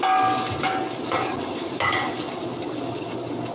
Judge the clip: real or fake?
real